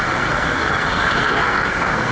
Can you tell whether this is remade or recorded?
remade